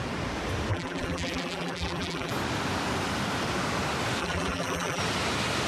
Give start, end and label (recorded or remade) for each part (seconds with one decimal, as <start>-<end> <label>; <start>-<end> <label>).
0.0-0.7 recorded; 0.7-2.3 remade; 2.3-4.2 recorded; 4.2-5.0 remade; 5.0-5.7 recorded